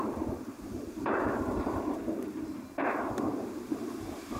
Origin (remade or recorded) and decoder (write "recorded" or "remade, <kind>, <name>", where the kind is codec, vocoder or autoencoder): remade, vocoder, BigVGAN v2